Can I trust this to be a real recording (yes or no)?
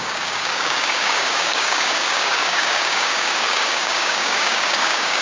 no